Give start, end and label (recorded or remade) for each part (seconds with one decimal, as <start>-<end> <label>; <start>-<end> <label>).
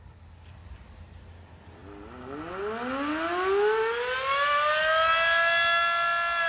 0.0-6.5 recorded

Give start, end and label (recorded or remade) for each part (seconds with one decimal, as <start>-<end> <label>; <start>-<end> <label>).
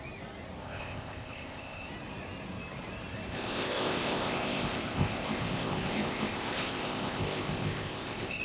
0.0-0.6 recorded; 0.6-1.9 remade; 1.9-3.3 recorded; 3.3-8.4 remade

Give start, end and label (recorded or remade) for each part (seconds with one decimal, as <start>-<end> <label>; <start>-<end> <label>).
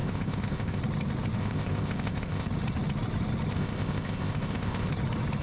0.0-0.8 remade; 0.8-1.4 recorded; 1.4-2.5 remade; 2.5-3.5 recorded; 3.5-4.9 remade; 4.9-5.4 recorded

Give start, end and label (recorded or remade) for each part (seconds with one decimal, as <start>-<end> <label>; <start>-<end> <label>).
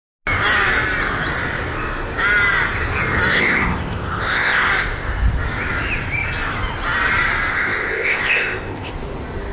0.0-3.3 recorded; 3.3-4.7 remade; 4.7-7.5 recorded; 7.5-8.9 remade; 8.9-9.5 recorded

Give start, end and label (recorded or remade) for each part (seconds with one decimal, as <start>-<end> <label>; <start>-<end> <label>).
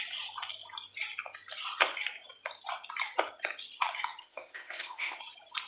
0.0-4.2 recorded; 4.2-5.2 remade; 5.2-5.7 recorded